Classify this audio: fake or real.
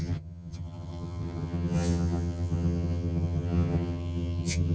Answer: fake